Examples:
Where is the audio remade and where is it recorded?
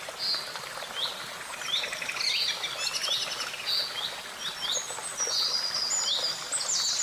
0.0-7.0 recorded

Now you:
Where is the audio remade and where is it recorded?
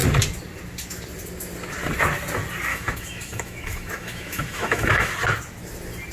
0.0-2.7 recorded; 2.7-5.1 remade; 5.1-6.1 recorded